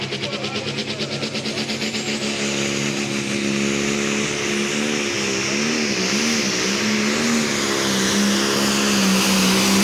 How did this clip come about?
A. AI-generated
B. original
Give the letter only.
B